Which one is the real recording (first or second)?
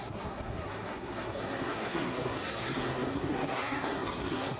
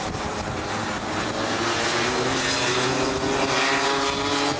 second